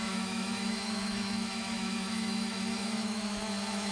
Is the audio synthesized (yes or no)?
yes